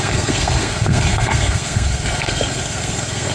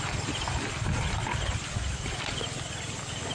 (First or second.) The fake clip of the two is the first